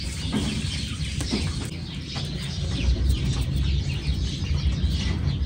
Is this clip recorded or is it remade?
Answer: recorded